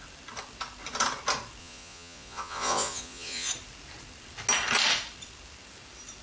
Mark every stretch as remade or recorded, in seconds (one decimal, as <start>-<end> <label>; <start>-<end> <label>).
0.0-1.6 recorded; 1.6-3.5 remade; 3.5-6.2 recorded